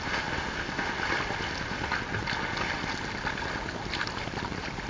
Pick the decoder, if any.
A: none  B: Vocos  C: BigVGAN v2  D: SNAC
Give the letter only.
A